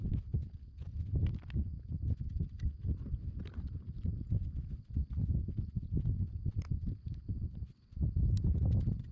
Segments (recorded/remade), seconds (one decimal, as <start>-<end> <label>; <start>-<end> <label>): 0.0-3.4 recorded; 3.4-5.0 remade; 5.0-8.3 recorded; 8.3-9.1 remade